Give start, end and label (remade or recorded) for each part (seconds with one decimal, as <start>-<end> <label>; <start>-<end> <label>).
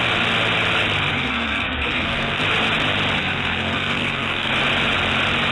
0.0-1.1 recorded; 1.1-2.4 remade; 2.4-3.2 recorded; 3.2-4.5 remade; 4.5-5.5 recorded